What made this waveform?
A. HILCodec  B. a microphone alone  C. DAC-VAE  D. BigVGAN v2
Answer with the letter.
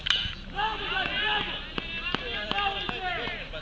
B